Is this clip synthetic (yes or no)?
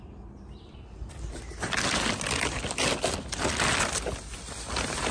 no